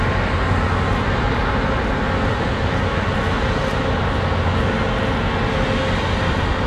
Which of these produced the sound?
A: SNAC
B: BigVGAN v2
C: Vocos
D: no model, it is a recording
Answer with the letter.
D